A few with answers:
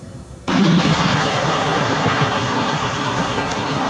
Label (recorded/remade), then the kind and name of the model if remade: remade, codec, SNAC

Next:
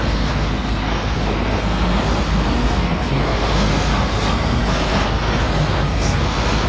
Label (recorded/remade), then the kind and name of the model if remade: remade, codec, SNAC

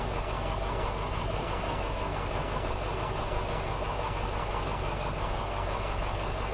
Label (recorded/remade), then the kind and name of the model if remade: remade, codec, SNAC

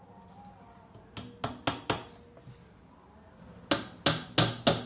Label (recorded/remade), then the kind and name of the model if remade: recorded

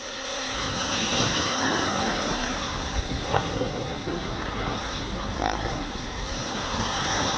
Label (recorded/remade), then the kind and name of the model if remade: remade, codec, SNAC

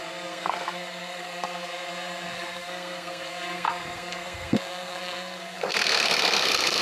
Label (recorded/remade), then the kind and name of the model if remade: remade, codec, SNAC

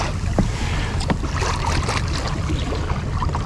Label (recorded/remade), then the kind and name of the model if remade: recorded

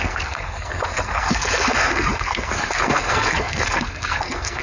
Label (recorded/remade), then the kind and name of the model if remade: remade, codec, SNAC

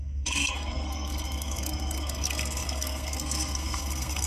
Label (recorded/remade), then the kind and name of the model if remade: remade, codec, SNAC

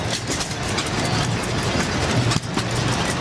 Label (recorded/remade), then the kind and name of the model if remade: recorded